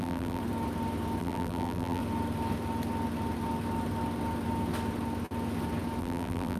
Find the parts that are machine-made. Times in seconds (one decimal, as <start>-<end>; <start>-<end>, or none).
0.0-0.4; 1.2-2.0; 6.0-6.6